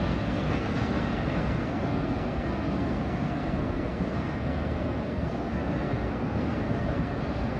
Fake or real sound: fake